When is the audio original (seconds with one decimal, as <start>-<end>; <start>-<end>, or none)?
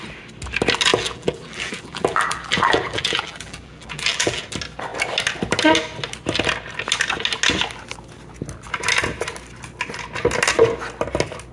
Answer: 0.0-0.9; 4.4-11.5